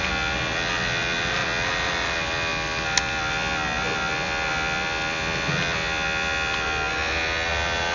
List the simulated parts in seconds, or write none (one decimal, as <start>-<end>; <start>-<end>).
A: none